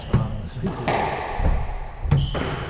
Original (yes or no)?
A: yes